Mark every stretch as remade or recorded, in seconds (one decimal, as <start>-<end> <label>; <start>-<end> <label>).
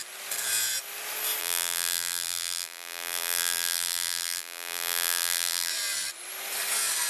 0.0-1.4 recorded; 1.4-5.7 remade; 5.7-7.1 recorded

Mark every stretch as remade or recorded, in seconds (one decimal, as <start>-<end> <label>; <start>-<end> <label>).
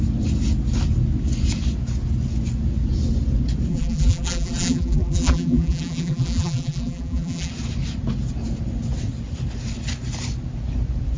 0.0-3.7 recorded; 3.7-7.5 remade; 7.5-11.2 recorded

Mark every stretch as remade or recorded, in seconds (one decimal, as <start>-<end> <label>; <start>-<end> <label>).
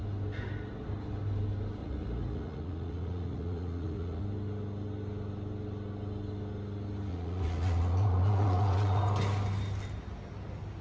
0.0-1.8 recorded; 1.8-4.2 remade; 4.2-7.1 recorded; 7.1-9.0 remade; 9.0-10.8 recorded